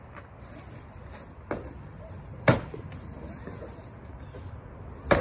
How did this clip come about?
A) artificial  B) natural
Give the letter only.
B